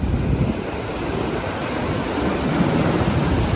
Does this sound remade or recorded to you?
recorded